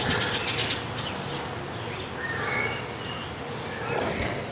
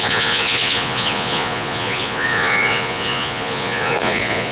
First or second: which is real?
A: first